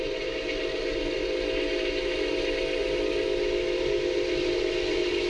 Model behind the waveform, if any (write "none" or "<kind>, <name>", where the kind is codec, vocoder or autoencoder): none